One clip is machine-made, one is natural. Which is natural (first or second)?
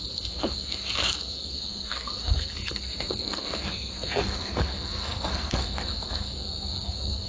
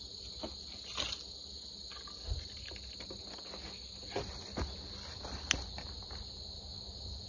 second